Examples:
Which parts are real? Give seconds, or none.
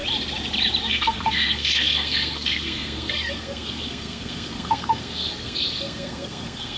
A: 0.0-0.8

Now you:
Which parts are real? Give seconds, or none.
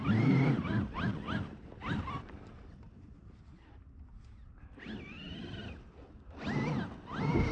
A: 0.0-7.5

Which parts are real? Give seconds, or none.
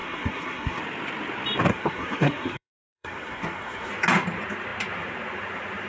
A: 0.8-1.7; 3.9-5.9